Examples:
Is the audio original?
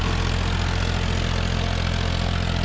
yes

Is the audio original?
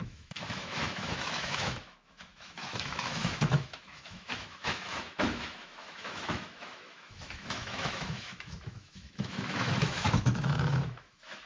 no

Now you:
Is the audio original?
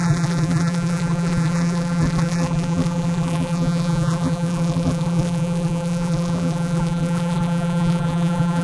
no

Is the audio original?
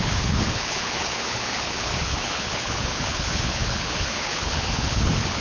no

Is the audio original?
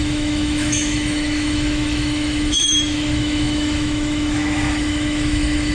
no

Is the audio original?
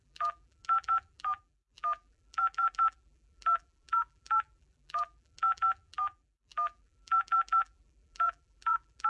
no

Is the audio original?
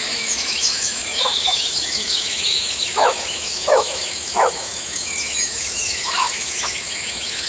no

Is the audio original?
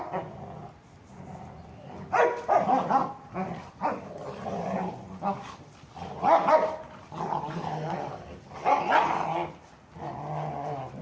yes